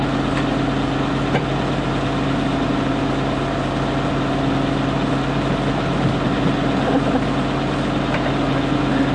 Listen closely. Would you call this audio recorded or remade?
recorded